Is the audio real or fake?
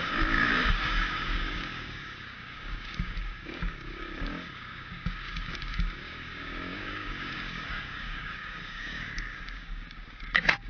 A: fake